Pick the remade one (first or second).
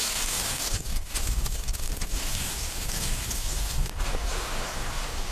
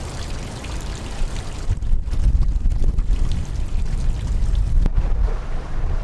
first